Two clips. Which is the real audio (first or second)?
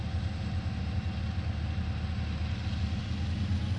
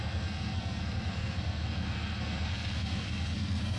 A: first